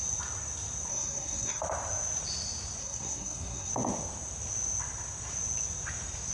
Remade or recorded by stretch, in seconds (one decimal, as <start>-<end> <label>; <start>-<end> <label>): 0.0-0.9 recorded; 0.9-1.6 remade; 1.6-2.8 recorded; 2.8-3.7 remade; 3.7-6.3 recorded